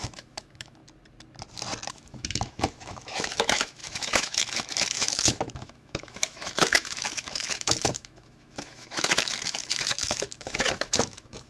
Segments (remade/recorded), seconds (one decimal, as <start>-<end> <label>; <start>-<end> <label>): 0.0-0.8 remade; 0.8-1.9 recorded; 1.9-11.5 remade